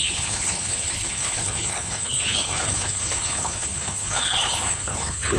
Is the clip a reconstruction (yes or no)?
yes